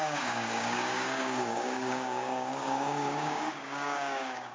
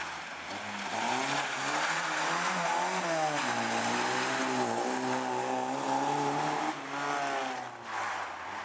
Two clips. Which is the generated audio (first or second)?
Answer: first